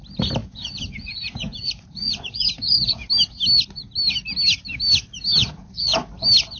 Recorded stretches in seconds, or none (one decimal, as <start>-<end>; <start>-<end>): 0.0-0.4; 3.1-5.4; 6.1-6.6